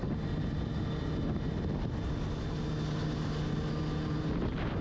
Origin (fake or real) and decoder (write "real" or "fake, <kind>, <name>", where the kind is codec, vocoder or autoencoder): real